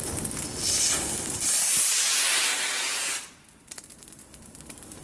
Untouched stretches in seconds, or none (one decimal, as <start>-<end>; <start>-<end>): 0.0-5.0